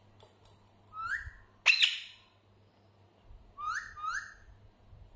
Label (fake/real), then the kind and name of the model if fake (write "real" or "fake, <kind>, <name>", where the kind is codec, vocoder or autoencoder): real